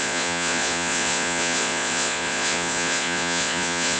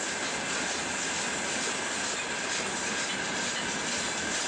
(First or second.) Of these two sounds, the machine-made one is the first